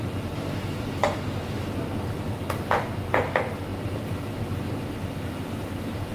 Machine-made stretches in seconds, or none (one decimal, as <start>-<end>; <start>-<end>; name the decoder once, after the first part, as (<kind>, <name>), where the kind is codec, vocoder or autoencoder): none